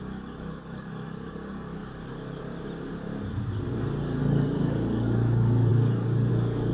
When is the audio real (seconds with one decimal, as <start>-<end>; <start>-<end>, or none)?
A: 1.8-4.2